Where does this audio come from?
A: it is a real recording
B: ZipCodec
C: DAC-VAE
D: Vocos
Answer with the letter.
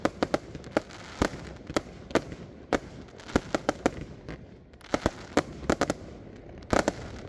A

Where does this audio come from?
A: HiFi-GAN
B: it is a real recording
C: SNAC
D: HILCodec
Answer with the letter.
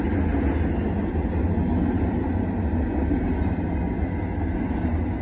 B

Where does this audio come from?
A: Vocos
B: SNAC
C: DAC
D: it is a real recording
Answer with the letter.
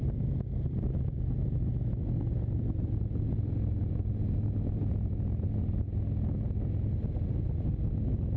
D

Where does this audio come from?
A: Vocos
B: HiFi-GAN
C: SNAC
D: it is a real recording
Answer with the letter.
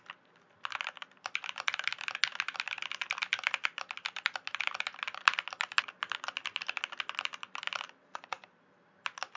D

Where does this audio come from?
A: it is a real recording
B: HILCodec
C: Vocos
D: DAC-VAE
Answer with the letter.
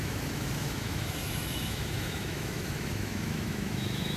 D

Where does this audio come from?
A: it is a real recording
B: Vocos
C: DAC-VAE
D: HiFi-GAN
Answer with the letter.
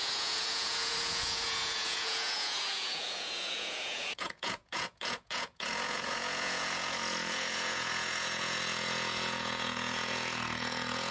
B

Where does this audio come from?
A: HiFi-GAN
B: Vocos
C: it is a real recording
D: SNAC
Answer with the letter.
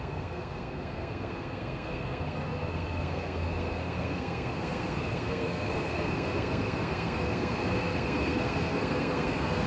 D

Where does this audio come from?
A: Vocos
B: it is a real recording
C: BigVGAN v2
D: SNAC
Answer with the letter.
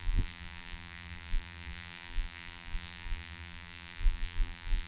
C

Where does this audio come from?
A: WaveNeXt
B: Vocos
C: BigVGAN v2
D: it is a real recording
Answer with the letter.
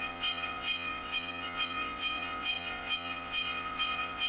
A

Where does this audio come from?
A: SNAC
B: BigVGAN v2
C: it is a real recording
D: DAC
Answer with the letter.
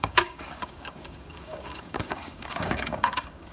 D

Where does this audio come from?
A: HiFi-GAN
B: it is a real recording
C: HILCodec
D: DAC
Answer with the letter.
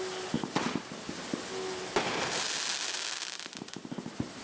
B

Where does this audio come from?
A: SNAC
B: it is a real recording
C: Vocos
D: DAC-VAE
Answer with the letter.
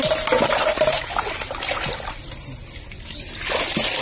B